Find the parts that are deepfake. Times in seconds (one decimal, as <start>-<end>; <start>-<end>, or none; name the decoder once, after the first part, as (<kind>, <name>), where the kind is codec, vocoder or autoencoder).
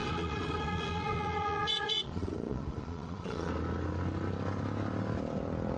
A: 0.0-3.5 (vocoder, Vocos)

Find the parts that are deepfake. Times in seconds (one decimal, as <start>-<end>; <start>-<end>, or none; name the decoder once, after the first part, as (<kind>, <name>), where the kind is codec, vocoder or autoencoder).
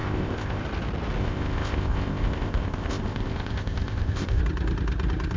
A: 0.0-0.6 (codec, ZipCodec); 1.2-4.4